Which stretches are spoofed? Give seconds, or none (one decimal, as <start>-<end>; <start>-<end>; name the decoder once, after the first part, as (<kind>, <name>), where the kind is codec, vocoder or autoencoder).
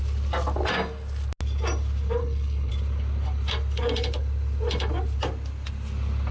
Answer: 2.2-2.7 (codec, HILCodec)